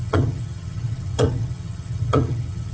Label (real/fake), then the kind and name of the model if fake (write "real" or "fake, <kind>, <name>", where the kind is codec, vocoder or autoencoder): fake, vocoder, HiFi-GAN